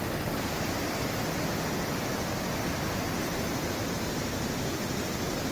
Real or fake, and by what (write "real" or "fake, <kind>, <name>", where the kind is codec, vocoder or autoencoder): real